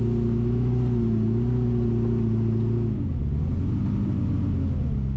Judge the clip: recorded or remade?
recorded